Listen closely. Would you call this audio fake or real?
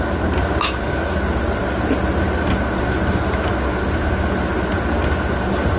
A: real